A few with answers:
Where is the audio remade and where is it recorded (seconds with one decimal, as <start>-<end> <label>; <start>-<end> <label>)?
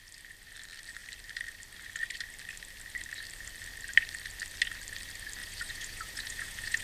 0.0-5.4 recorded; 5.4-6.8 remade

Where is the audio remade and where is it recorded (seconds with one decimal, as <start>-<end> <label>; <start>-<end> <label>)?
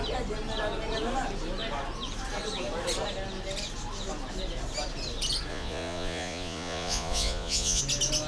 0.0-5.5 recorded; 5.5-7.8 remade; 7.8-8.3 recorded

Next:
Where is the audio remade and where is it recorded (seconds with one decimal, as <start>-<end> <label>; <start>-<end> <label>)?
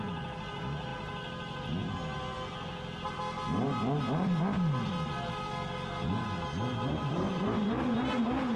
0.0-8.6 recorded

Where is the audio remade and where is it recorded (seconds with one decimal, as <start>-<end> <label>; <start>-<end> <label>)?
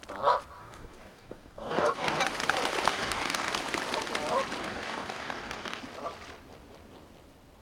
0.0-0.6 recorded; 0.6-2.2 remade; 2.2-2.9 recorded; 2.9-3.5 remade; 3.5-4.6 recorded; 4.6-5.8 remade; 5.8-7.6 recorded